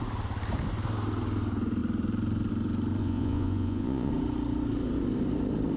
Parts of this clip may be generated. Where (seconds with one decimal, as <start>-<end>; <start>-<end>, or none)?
3.0-4.1